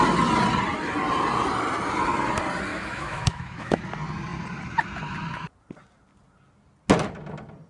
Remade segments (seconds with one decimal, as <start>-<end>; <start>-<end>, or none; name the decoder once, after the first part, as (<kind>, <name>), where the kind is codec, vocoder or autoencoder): 2.7-3.8 (autoencoder, DAC-VAE)